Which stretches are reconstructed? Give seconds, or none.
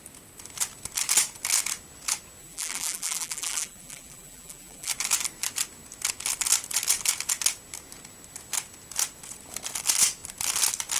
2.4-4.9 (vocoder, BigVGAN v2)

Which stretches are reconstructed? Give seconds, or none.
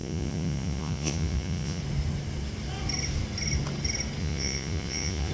0.0-1.8 (vocoder, Vocos); 4.2-5.3